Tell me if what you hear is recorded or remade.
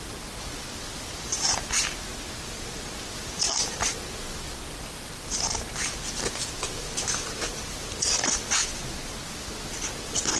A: recorded